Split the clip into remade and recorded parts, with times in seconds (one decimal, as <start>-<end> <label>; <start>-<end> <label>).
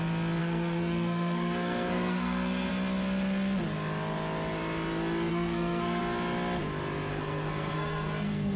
0.0-0.4 recorded; 0.4-2.7 remade; 2.7-5.3 recorded; 5.3-6.0 remade; 6.0-7.1 recorded; 7.1-8.6 remade